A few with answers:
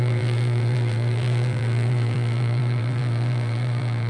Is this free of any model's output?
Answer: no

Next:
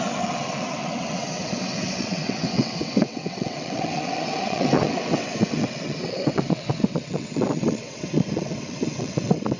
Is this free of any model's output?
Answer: no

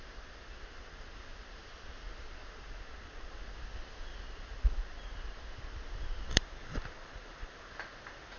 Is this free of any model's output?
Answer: yes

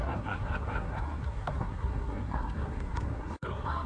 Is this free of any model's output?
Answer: no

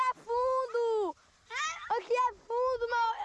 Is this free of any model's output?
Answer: yes